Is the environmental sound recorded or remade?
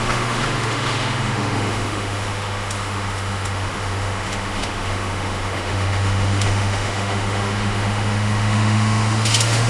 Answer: remade